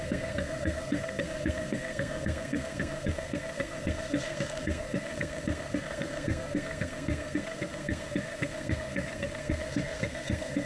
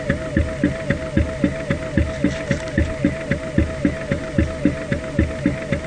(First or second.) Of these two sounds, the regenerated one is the first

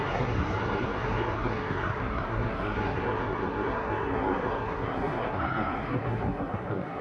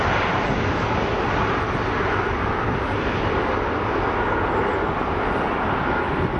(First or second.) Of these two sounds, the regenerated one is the first